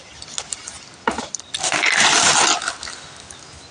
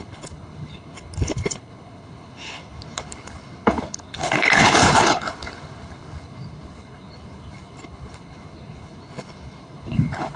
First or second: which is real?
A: first